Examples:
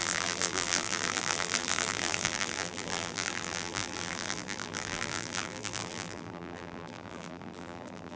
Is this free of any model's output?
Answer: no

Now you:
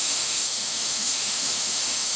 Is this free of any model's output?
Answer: no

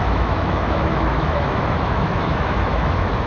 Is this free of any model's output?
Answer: no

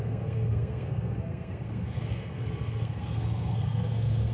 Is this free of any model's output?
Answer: no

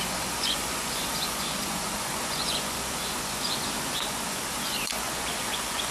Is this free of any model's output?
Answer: no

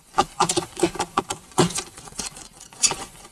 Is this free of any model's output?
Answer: no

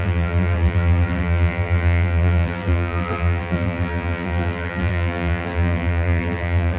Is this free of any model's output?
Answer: no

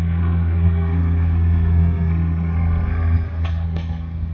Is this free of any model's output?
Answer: no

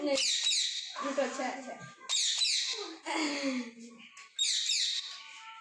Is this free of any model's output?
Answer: yes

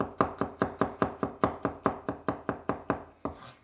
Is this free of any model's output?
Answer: yes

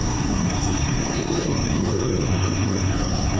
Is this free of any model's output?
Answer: no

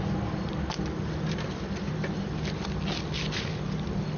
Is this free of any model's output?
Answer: yes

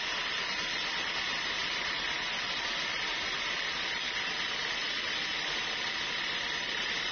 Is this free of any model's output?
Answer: yes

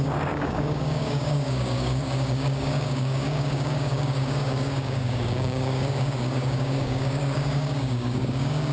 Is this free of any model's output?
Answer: no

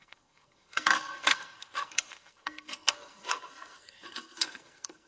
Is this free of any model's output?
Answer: no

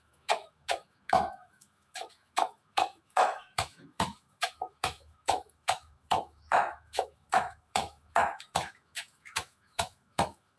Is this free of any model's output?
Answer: no